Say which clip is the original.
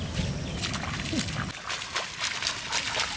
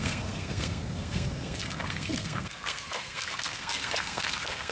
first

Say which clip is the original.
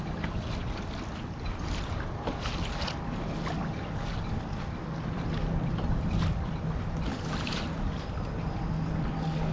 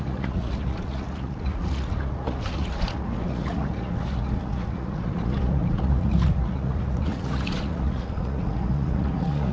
first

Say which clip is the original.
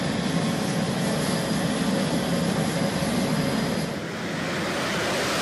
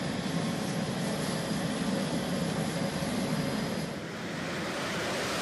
first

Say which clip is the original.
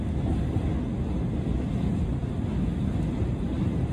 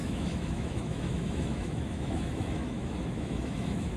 first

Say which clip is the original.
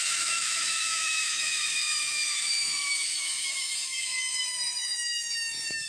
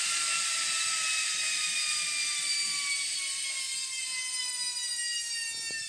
second